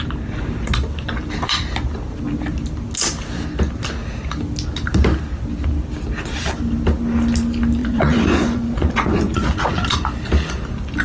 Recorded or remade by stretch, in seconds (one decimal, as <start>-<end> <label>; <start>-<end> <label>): 0.0-7.8 recorded; 7.8-9.7 remade; 9.7-11.0 recorded